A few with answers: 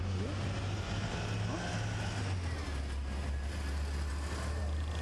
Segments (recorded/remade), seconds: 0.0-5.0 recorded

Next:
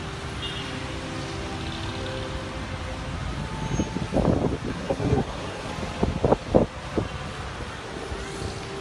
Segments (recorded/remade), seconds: 0.0-4.7 recorded; 4.7-5.7 remade; 5.7-8.8 recorded

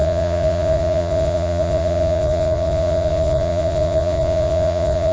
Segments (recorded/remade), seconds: 0.0-5.1 remade

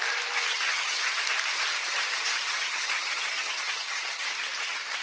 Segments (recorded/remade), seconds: 0.0-0.5 recorded; 0.5-1.2 remade; 1.2-1.8 recorded; 1.8-4.3 remade; 4.3-5.0 recorded

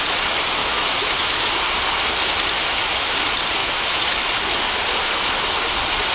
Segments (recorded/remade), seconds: 0.0-0.6 recorded; 0.6-1.5 remade; 1.5-3.6 recorded; 3.6-4.3 remade; 4.3-6.1 recorded

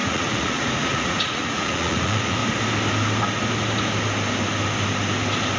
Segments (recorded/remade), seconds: 0.0-2.4 remade; 2.4-5.6 recorded

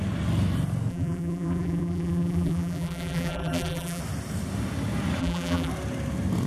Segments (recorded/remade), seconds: 0.0-0.9 recorded; 0.9-4.0 remade; 4.0-5.2 recorded; 5.2-5.7 remade; 5.7-6.5 recorded

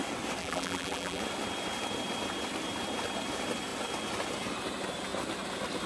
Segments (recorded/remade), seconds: 0.0-0.4 recorded; 0.4-1.2 remade; 1.2-5.9 recorded